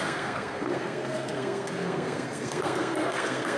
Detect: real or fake fake